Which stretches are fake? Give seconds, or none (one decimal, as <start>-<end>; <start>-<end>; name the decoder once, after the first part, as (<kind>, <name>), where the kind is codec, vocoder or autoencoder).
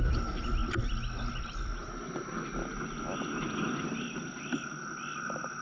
none